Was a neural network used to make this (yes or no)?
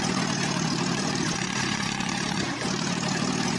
yes